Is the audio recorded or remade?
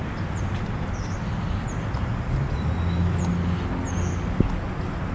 recorded